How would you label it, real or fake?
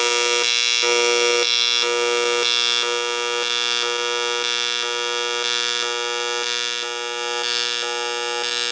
real